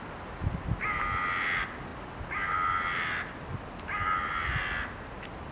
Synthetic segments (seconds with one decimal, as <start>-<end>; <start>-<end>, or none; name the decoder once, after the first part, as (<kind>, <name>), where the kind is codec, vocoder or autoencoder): none